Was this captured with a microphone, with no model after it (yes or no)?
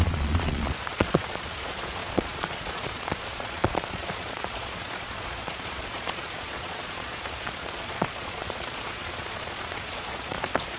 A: no